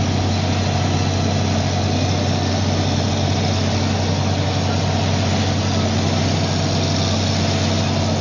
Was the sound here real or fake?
real